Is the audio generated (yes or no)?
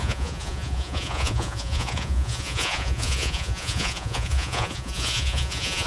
yes